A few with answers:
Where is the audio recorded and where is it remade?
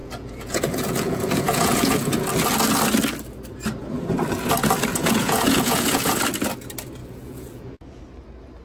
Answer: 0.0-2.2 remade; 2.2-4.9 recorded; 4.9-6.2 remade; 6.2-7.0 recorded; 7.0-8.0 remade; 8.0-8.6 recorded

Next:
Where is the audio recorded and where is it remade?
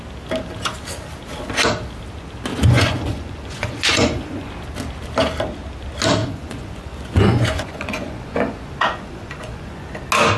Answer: 0.0-2.5 recorded; 2.5-4.5 remade; 4.5-6.2 recorded; 6.2-9.9 remade; 9.9-10.4 recorded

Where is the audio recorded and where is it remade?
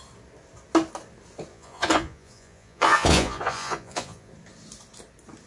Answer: 0.0-1.5 recorded; 1.5-4.3 remade; 4.3-5.5 recorded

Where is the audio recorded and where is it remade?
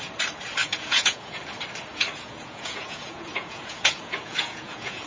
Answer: 0.0-0.6 recorded; 0.6-1.4 remade; 1.4-1.9 recorded; 1.9-5.1 remade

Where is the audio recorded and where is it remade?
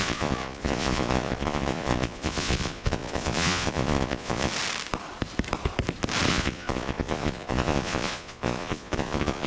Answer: 0.0-4.5 remade; 4.5-6.3 recorded; 6.3-9.5 remade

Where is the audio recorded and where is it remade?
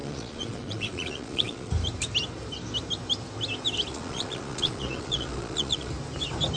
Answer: 0.0-1.7 remade; 1.7-3.9 recorded; 3.9-5.9 remade; 5.9-6.6 recorded